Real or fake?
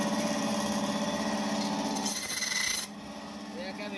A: real